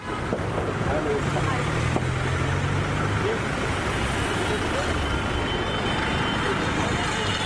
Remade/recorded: recorded